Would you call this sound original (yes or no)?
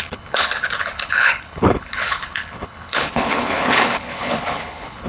no